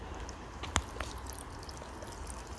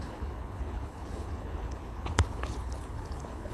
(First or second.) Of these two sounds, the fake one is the second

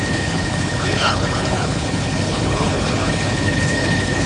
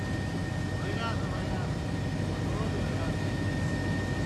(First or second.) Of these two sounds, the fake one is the first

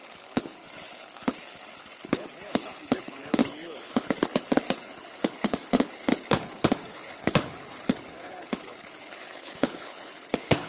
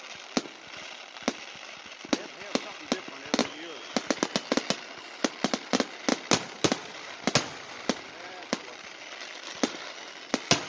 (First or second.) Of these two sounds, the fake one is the first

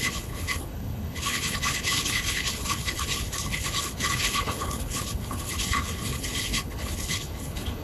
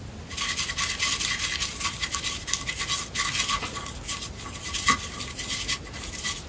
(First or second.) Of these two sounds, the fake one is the first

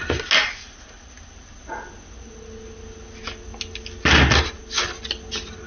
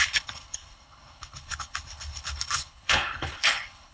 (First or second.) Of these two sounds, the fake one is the second